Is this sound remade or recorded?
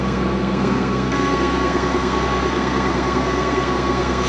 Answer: remade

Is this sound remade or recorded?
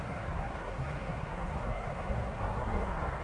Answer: remade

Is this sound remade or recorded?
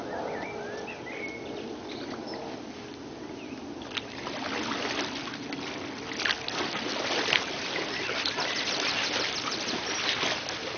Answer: recorded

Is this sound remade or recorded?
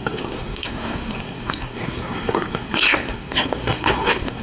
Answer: remade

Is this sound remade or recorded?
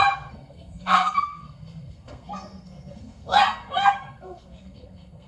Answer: remade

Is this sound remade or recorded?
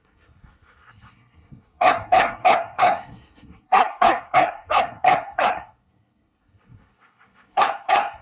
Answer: remade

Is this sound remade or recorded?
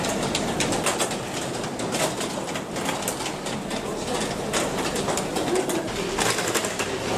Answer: recorded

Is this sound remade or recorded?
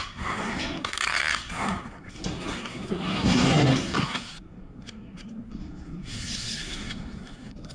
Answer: remade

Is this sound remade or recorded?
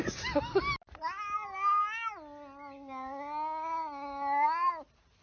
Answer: recorded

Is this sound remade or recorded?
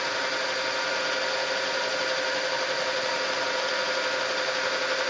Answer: recorded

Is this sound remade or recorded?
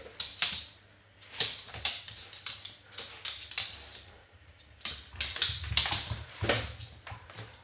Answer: recorded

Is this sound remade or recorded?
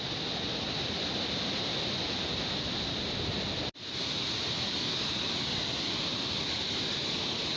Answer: recorded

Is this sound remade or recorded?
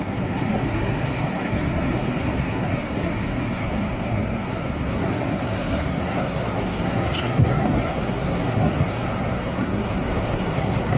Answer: remade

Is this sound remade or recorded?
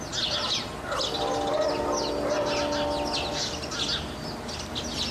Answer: recorded